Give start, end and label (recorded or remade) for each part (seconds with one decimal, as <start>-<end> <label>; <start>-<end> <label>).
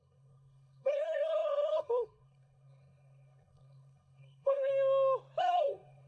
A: 0.0-4.7 remade; 4.7-5.4 recorded; 5.4-6.1 remade